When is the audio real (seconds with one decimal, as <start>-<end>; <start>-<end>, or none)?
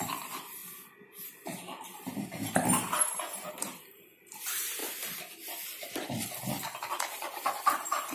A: 0.6-3.5; 4.8-6.9